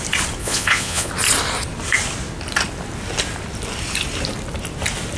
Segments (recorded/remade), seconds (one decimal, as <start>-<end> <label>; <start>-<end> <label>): 0.0-0.4 recorded; 0.4-1.1 remade; 1.1-5.2 recorded